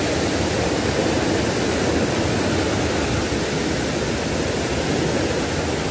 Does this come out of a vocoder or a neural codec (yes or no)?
no